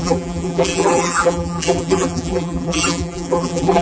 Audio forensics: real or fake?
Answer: fake